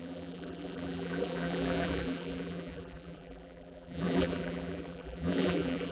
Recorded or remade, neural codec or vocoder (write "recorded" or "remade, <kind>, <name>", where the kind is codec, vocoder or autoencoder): remade, vocoder, BigVGAN v2